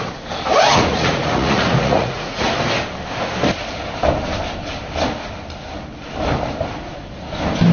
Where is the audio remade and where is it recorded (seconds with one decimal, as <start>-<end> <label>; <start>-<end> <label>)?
0.0-0.7 recorded; 0.7-2.5 remade; 2.5-7.7 recorded

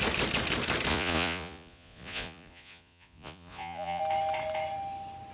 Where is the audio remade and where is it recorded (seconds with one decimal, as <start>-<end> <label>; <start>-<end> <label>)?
0.0-0.9 recorded; 0.9-4.0 remade; 4.0-5.3 recorded